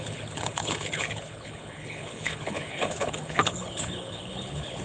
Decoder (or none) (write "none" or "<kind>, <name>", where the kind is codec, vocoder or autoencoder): codec, HILCodec